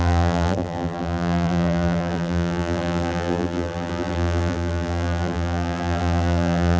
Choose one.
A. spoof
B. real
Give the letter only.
A